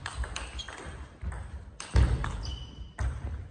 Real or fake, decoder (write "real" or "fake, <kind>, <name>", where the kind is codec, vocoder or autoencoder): real